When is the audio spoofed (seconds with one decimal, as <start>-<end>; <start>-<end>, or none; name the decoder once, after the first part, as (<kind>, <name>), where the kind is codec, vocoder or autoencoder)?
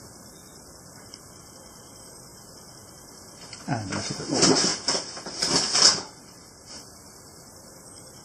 none